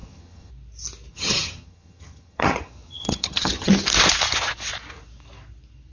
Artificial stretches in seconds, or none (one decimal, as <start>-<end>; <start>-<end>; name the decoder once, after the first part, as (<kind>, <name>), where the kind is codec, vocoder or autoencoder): 0.0-0.5 (vocoder, HiFi-GAN); 1.1-3.7